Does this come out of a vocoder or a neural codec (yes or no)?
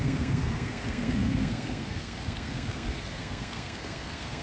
yes